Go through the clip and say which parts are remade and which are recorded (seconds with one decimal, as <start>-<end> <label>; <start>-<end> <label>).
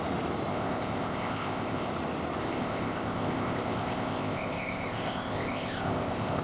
0.0-0.5 recorded; 0.5-1.9 remade; 1.9-2.4 recorded; 2.4-6.4 remade